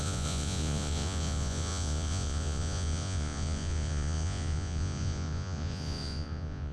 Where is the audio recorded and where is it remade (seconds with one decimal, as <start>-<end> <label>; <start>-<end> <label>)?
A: 0.0-6.7 remade

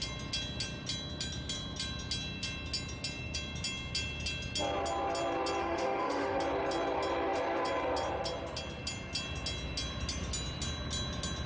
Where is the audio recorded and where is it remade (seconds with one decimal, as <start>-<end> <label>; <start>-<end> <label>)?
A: 0.0-5.6 recorded; 5.6-6.4 remade; 6.4-11.5 recorded